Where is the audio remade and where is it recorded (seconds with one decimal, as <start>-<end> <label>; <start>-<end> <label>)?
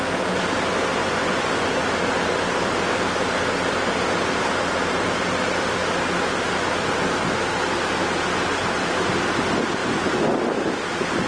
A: 0.0-1.0 recorded; 1.0-1.8 remade; 1.8-9.8 recorded; 9.8-10.3 remade; 10.3-11.3 recorded